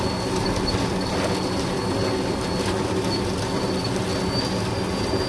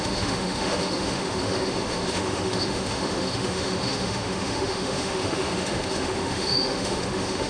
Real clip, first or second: first